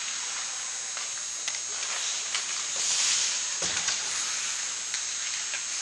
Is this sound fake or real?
real